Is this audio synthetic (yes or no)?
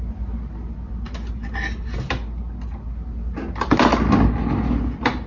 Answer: no